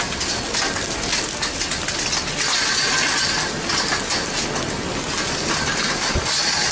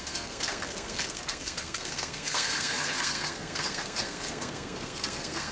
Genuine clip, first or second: first